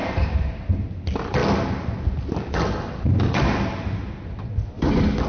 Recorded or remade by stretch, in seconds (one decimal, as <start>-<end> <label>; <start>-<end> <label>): 0.0-5.3 recorded